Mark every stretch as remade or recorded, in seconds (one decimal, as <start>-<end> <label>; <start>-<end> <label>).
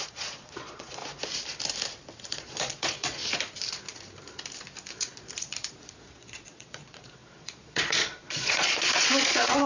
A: 0.0-1.0 remade; 1.0-2.2 recorded; 2.2-3.2 remade; 3.2-4.9 recorded; 4.9-9.7 remade